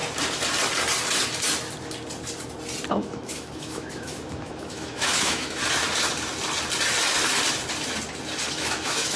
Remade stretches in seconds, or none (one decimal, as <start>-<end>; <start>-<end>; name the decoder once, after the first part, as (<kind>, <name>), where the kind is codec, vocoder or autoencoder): 2.9-5.6 (autoencoder, DAC-VAE); 8.5-9.2